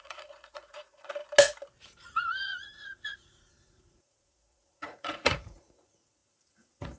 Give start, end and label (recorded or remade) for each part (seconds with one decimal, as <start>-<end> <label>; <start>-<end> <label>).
0.0-1.2 remade; 1.2-1.8 recorded; 1.8-7.0 remade